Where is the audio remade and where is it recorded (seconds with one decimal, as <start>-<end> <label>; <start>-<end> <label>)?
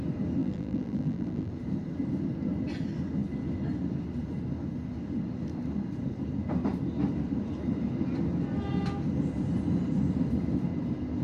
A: 0.0-0.4 recorded; 0.4-1.5 remade; 1.5-11.2 recorded